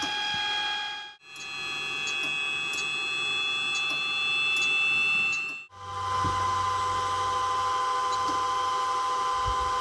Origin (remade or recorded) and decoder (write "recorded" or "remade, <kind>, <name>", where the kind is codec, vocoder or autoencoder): recorded